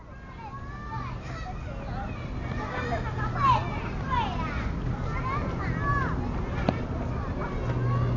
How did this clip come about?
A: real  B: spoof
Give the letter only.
A